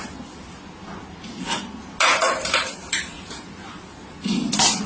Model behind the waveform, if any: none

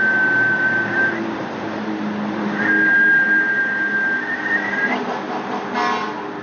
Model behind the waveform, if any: none